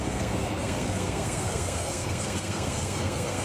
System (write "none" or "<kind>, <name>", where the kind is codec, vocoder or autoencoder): codec, SNAC